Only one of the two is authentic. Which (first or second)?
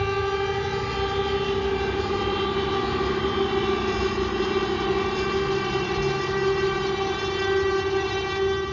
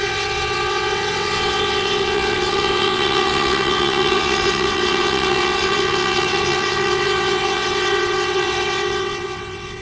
first